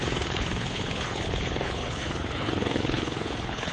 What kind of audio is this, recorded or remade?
remade